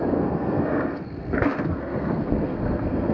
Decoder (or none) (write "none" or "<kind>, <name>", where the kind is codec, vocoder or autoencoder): codec, SNAC